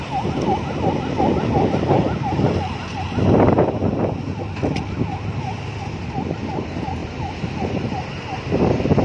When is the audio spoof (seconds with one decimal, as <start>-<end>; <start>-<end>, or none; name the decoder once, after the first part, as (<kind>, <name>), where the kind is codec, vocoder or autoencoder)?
none